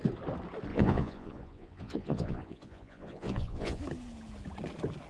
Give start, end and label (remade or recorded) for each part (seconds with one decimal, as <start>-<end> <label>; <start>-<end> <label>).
0.0-0.7 recorded; 0.7-3.8 remade; 3.8-5.1 recorded